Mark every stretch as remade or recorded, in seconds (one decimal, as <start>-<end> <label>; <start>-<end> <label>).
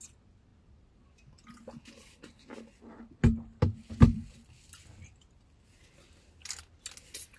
0.0-7.4 recorded